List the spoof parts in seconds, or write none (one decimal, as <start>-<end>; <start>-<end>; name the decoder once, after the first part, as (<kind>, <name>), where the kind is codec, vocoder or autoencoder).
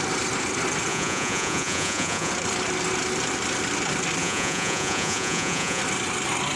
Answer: 0.9-2.3 (vocoder, Vocos); 4.2-5.8